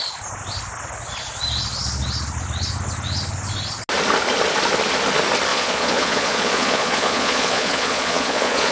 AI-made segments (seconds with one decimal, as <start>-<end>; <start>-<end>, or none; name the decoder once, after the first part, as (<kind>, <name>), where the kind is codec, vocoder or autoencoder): 5.5-8.7 (vocoder, Vocos)